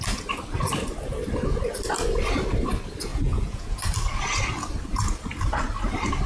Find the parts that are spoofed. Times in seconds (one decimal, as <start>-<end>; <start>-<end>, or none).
3.1-3.7